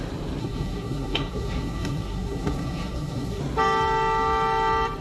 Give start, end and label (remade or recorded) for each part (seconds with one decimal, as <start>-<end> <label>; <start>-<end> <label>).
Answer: 0.0-0.4 recorded; 0.4-3.4 remade; 3.4-5.0 recorded

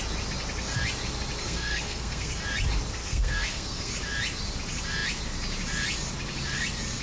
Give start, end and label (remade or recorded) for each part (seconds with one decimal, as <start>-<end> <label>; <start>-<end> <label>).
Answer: 0.0-1.4 recorded; 1.4-2.4 remade; 2.4-3.0 recorded; 3.0-3.9 remade; 3.9-7.0 recorded

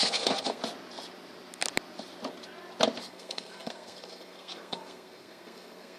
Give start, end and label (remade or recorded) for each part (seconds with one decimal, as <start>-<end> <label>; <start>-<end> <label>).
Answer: 0.0-0.6 remade; 0.6-3.0 recorded; 3.0-6.0 remade

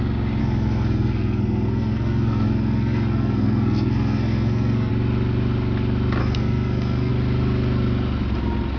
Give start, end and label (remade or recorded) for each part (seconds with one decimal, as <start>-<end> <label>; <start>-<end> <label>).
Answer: 0.0-0.4 recorded; 0.4-4.9 remade; 4.9-6.2 recorded; 6.2-7.1 remade; 7.1-8.8 recorded

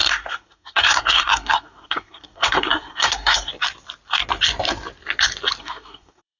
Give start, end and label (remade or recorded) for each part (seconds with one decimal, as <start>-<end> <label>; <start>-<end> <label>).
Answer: 0.0-3.5 remade; 3.5-5.6 recorded; 5.6-6.4 remade